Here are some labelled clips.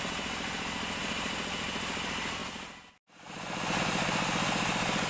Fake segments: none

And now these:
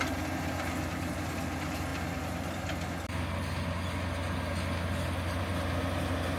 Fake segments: none

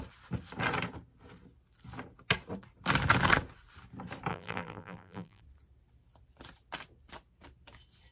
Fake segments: 4.3-5.4 (vocoder, BigVGAN v2)

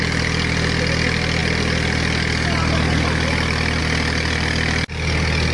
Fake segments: none